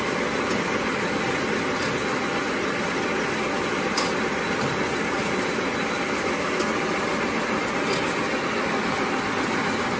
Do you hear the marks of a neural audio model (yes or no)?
no